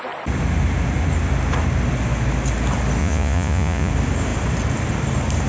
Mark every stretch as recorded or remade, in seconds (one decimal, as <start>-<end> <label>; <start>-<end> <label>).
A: 0.0-3.0 recorded; 3.0-3.9 remade; 3.9-5.5 recorded